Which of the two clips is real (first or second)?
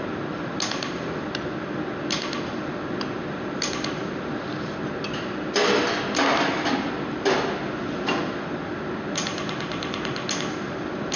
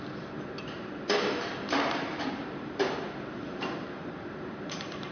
first